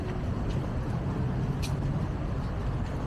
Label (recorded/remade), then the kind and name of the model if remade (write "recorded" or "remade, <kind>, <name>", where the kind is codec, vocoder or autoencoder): recorded